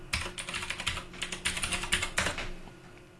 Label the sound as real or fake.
real